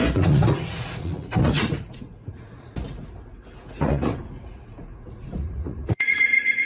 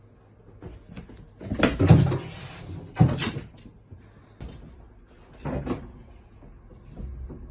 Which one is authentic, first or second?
second